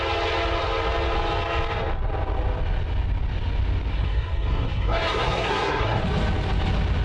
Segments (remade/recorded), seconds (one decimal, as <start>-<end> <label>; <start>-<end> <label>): 0.0-3.9 recorded; 3.9-6.0 remade; 6.0-7.0 recorded